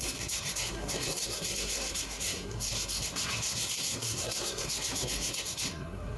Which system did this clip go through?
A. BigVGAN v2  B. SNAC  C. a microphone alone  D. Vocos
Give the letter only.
B